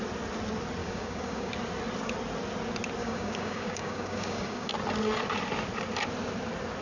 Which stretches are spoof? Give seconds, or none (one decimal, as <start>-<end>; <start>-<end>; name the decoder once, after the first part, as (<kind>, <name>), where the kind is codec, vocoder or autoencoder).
0.8-1.5 (codec, DAC); 3.0-4.7